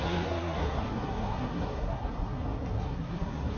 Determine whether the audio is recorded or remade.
remade